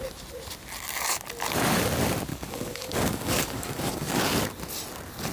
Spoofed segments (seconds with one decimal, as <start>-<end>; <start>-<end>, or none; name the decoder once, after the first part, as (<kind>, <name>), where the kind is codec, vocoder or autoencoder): 2.3-4.2 (codec, DAC)